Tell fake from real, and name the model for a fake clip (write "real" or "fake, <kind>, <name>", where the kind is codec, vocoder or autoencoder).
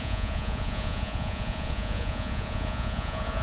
fake, vocoder, Vocos